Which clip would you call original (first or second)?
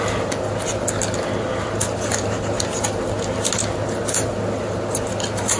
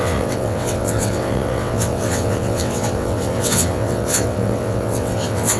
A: first